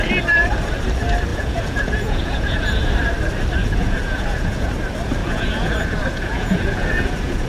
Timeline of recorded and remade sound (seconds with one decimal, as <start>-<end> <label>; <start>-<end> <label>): 0.0-1.3 recorded; 1.3-2.8 remade; 2.8-3.6 recorded; 3.6-4.7 remade; 4.7-5.2 recorded; 5.2-7.5 remade